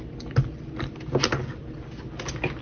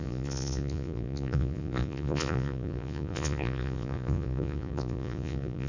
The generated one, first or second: second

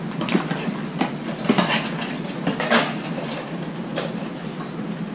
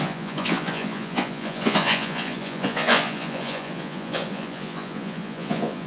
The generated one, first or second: second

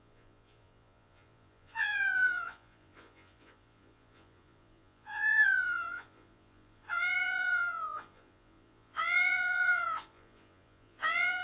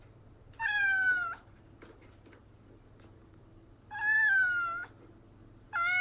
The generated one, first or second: first